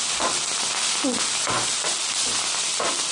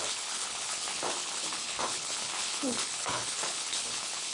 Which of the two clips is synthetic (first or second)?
second